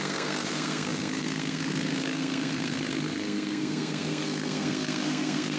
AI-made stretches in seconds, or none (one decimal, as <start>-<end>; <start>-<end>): 0.0-5.6